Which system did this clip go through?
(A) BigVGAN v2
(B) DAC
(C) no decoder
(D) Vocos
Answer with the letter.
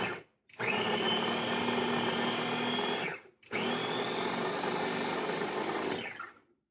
C